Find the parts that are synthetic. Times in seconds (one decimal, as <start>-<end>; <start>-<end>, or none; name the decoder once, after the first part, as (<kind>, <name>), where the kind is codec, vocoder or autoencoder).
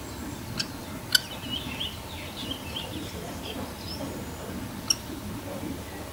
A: 2.4-4.1 (vocoder, BigVGAN v2)